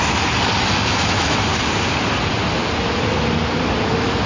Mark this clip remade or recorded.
recorded